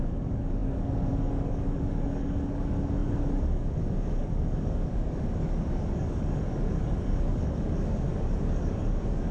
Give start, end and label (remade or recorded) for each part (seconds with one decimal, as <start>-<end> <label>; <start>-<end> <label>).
0.0-9.3 remade